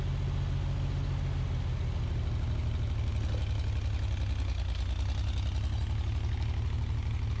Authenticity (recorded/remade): recorded